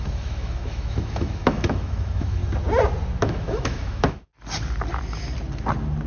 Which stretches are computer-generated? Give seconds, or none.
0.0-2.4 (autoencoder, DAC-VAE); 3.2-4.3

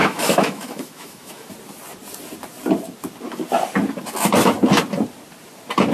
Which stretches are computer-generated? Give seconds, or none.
0.0-1.5 (autoencoder, DAC-VAE)

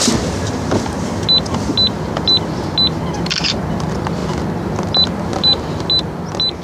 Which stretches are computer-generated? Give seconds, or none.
none

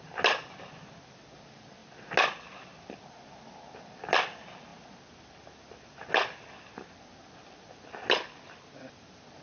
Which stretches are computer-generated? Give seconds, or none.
none